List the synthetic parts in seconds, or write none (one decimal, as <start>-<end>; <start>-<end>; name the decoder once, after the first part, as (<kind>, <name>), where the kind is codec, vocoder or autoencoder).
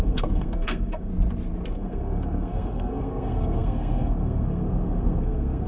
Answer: 0.0-1.1 (codec, SNAC); 1.7-5.7